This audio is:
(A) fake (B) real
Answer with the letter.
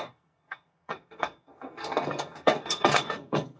A